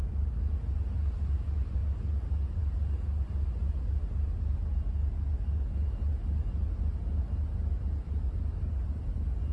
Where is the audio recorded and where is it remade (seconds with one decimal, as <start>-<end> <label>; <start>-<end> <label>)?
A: 0.0-9.5 recorded